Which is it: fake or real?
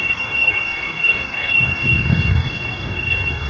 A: fake